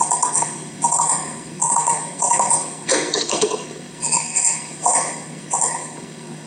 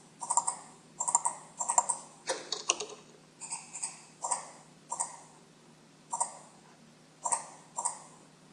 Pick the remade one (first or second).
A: first